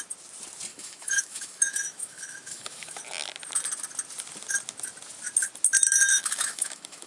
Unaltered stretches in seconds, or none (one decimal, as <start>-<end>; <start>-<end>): 0.0-0.7; 3.0-6.1